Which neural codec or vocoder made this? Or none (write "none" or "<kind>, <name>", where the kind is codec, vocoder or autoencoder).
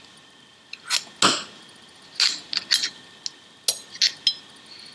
none